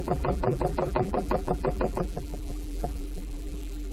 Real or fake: fake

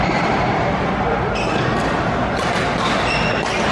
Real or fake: real